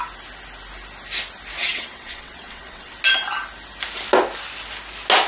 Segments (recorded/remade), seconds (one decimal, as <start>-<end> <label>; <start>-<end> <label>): 0.0-1.6 recorded; 1.6-2.9 remade; 2.9-5.3 recorded